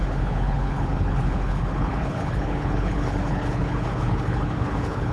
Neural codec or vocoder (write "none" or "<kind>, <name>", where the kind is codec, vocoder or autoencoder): codec, HILCodec